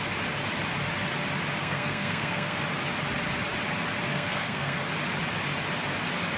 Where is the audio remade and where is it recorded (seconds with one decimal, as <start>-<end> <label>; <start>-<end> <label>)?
0.0-1.6 recorded; 1.6-2.6 remade; 2.6-4.1 recorded; 4.1-4.8 remade; 4.8-6.4 recorded